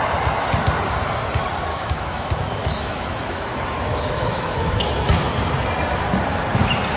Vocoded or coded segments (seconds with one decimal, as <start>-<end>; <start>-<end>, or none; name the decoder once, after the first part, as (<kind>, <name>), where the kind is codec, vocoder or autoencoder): 1.7-5.3 (autoencoder, DAC-VAE)